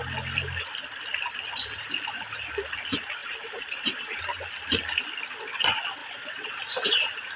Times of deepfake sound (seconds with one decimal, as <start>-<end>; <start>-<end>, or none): 3.2-4.2; 6.0-6.6